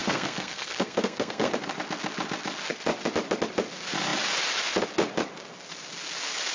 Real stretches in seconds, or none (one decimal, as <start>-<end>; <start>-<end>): 1.5-6.5